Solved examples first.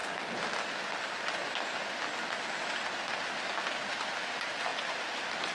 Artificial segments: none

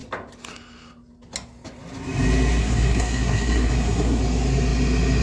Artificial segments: 2.6-4.2 (codec, SNAC)

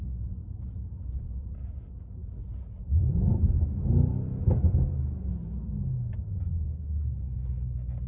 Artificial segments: none

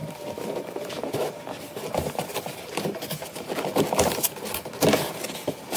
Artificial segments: 0.0-3.5 (vocoder, BigVGAN v2)

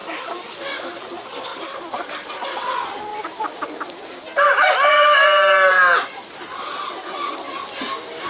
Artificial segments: 1.5-2.1 (vocoder, BigVGAN v2)

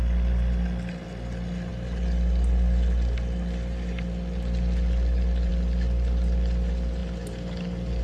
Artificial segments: none

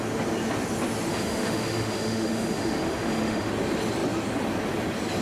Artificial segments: 1.1-3.5 (autoencoder, DAC-VAE)